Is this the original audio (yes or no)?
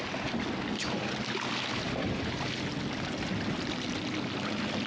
yes